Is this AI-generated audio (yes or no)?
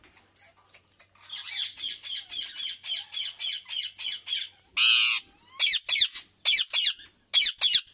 no